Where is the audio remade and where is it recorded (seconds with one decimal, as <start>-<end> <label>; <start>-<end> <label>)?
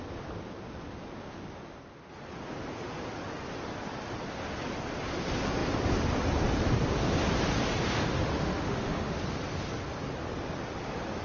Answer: 0.0-8.1 recorded; 8.1-9.2 remade; 9.2-11.2 recorded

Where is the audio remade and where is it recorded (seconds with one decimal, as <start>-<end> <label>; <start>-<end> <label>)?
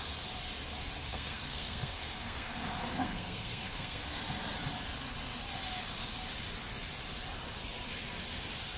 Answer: 0.0-1.1 recorded; 1.1-4.2 remade; 4.2-8.8 recorded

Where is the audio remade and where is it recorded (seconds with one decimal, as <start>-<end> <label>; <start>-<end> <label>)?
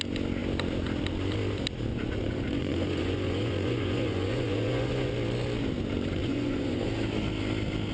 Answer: 0.0-1.9 recorded; 1.9-5.1 remade; 5.1-6.2 recorded; 6.2-6.9 remade; 6.9-7.9 recorded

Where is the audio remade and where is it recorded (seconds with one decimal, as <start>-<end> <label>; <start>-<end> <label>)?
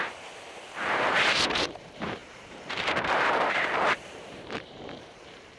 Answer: 0.0-5.6 remade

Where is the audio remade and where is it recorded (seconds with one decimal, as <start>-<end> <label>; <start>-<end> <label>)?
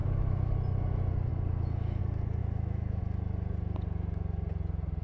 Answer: 0.0-0.5 remade; 0.5-2.4 recorded; 2.4-3.0 remade; 3.0-5.0 recorded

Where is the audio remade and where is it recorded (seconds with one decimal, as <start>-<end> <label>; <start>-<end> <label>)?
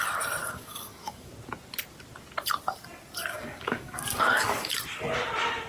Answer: 0.0-0.4 recorded; 0.4-1.3 remade; 1.3-3.3 recorded; 3.3-4.7 remade; 4.7-5.7 recorded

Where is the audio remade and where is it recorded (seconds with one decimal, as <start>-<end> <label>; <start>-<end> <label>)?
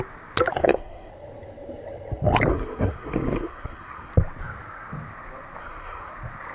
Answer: 0.0-0.6 recorded; 0.6-1.1 remade; 1.1-2.5 recorded; 2.5-4.1 remade; 4.1-5.6 recorded; 5.6-6.1 remade; 6.1-6.5 recorded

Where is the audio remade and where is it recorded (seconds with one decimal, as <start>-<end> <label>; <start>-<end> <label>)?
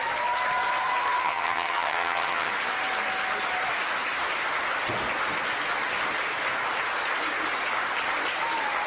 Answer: 0.0-1.2 recorded; 1.2-2.5 remade; 2.5-8.9 recorded